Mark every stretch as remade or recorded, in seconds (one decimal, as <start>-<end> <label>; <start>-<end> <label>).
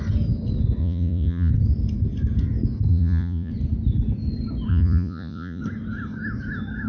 0.0-0.8 recorded; 0.8-1.5 remade; 1.5-2.9 recorded; 2.9-3.5 remade; 3.5-4.7 recorded; 4.7-5.6 remade; 5.6-6.9 recorded